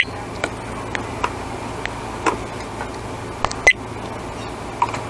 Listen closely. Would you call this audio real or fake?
real